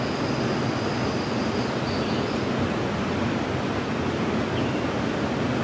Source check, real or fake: real